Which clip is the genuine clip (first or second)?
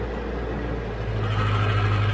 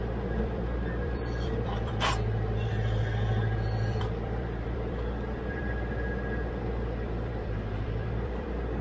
first